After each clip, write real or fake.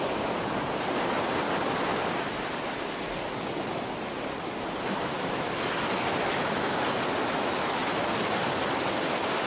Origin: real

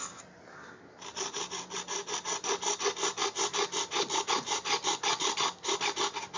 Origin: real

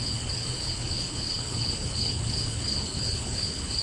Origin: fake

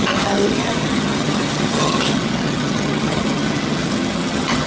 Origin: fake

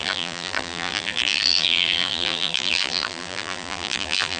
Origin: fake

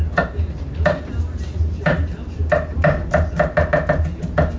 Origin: real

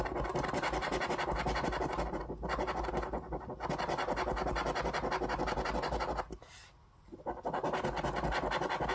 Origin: real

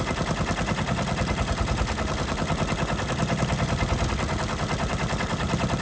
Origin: real